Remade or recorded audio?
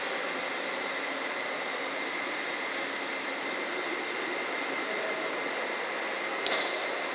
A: recorded